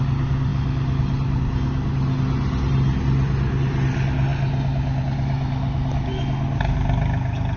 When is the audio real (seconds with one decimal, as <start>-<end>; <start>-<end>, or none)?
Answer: 0.0-7.6